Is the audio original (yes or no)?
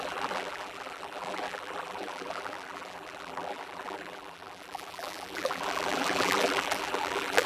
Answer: no